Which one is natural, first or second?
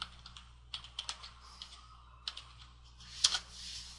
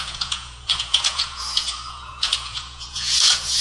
first